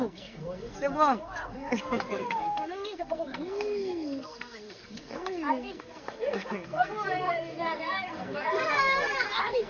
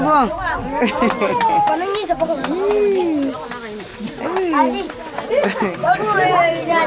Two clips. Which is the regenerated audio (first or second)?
first